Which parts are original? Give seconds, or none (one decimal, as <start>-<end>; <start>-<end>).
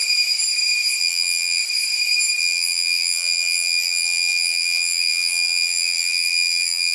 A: 0.0-1.0; 1.6-2.4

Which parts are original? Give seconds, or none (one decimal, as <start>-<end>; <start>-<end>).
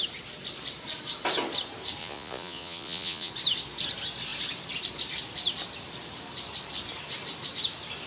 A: 0.0-2.0; 3.3-8.1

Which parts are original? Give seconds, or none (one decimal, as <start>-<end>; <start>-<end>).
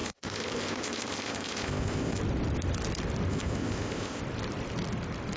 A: 2.2-3.3; 4.2-5.4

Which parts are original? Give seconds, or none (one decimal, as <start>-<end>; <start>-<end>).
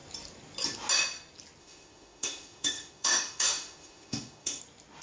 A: 0.0-1.6; 4.6-5.0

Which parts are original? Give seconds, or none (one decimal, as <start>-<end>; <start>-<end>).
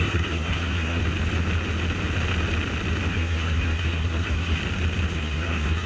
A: 1.0-3.1; 4.6-5.1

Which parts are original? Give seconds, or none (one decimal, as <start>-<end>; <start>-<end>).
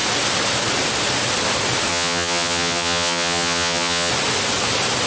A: 0.0-1.9; 4.1-5.1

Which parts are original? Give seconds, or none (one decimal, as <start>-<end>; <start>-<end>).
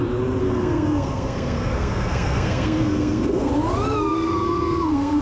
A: 0.0-0.4; 3.5-4.1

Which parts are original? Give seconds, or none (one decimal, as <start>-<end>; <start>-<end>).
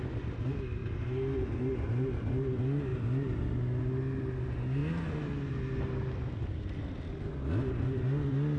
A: 0.0-8.6